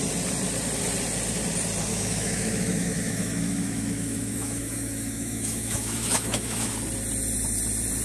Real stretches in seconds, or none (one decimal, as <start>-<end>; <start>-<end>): 0.0-1.9; 6.7-8.0